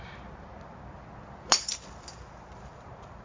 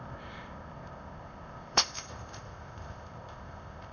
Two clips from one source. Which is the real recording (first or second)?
first